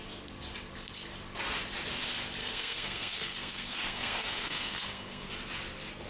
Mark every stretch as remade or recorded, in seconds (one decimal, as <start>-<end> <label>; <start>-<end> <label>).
0.0-2.4 recorded; 2.4-5.3 remade; 5.3-6.1 recorded

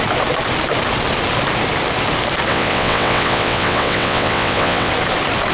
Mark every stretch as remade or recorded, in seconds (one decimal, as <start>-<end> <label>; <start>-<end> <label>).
0.0-2.5 recorded; 2.5-4.9 remade; 4.9-5.5 recorded

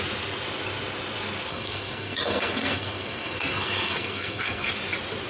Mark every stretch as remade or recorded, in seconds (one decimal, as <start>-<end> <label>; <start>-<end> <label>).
0.0-1.5 recorded; 1.5-4.7 remade; 4.7-5.3 recorded